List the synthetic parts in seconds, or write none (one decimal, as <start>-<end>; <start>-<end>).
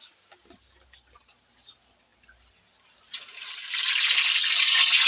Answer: none